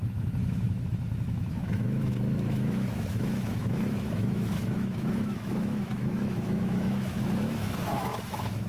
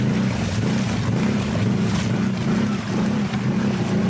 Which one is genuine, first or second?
second